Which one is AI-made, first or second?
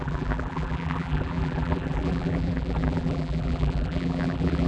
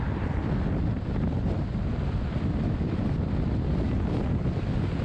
first